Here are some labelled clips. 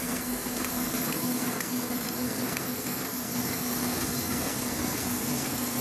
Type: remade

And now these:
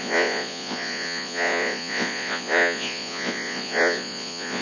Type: remade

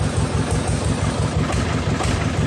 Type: recorded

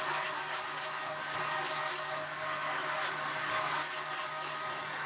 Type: remade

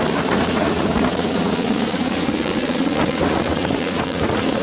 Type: remade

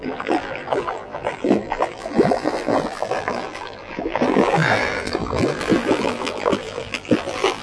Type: remade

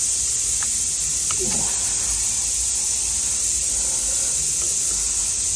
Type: recorded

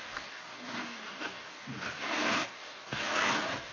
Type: remade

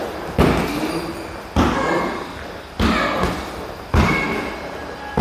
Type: recorded